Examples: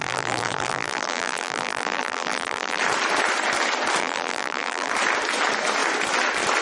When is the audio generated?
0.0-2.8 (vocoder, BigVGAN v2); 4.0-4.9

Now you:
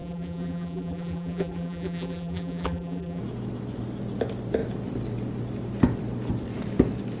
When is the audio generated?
0.0-3.2 (vocoder, BigVGAN v2)

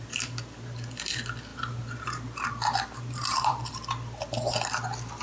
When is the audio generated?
1.5-3.7 (vocoder, BigVGAN v2)

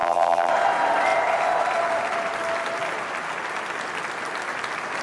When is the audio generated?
0.0-0.5 (vocoder, BigVGAN v2)

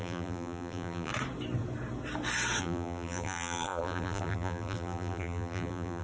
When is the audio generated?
0.0-1.1 (vocoder, BigVGAN v2); 2.6-6.0

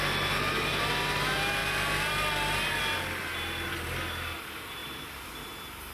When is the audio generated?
1.6-2.8 (vocoder, BigVGAN v2); 4.8-5.3